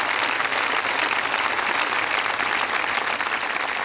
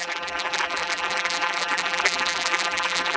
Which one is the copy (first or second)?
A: second